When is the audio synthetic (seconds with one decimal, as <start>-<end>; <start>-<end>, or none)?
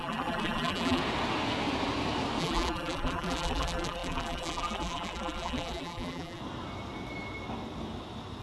0.0-1.0; 2.4-6.4